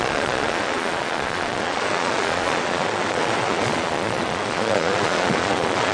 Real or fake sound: fake